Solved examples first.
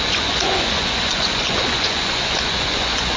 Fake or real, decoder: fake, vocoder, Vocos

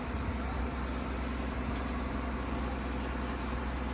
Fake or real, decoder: real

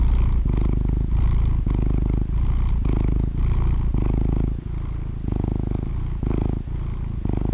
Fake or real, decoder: real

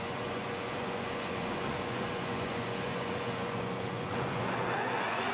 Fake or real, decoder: fake, vocoder, Vocos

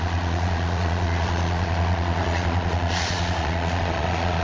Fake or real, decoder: fake, vocoder, Vocos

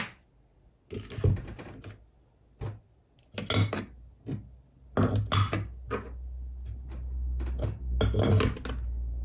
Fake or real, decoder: real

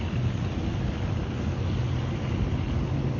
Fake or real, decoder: real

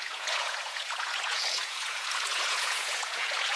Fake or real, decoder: fake, vocoder, Vocos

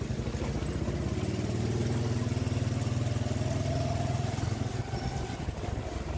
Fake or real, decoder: real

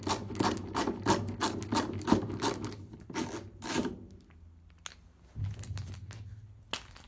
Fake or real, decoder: real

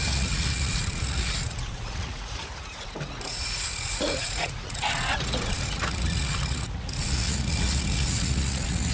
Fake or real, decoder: fake, vocoder, Vocos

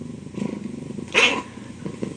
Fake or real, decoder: real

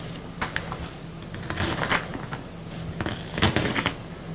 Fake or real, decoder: real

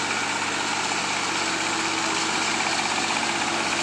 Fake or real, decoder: real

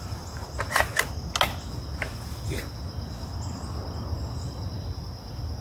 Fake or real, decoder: real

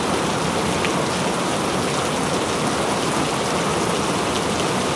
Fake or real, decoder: real